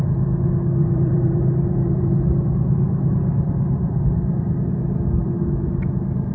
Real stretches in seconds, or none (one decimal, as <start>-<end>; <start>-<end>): 0.0-0.8; 4.4-5.2; 5.7-6.3